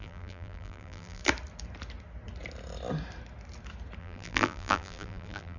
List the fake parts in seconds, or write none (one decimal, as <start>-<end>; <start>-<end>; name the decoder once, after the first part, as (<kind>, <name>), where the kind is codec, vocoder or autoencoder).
0.0-1.2 (vocoder, BigVGAN v2); 4.0-5.6